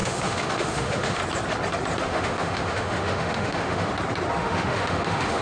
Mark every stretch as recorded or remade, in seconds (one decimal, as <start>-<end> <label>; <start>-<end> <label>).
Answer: 0.0-1.2 remade; 1.2-2.0 recorded; 2.0-3.9 remade; 3.9-4.4 recorded; 4.4-5.4 remade